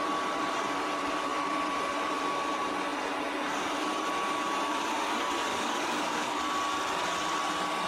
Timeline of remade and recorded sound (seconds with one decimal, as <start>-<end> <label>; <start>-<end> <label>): 0.0-5.5 recorded; 5.5-6.4 remade; 6.4-7.9 recorded